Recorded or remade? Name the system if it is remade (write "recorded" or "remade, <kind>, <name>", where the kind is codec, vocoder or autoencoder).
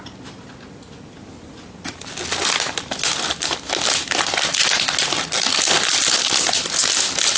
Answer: recorded